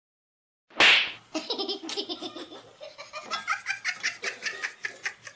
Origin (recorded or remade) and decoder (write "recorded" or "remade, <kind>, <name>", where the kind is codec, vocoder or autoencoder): recorded